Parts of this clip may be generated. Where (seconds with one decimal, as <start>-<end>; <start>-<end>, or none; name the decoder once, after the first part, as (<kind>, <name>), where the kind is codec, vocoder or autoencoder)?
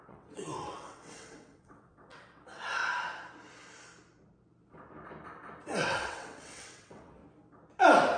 0.0-2.8 (vocoder, WaveNeXt); 5.8-7.2